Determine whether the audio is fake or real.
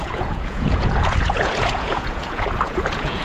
fake